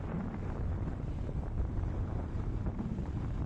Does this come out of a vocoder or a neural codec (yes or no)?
yes